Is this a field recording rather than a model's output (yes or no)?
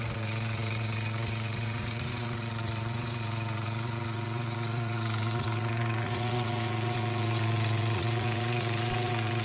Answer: no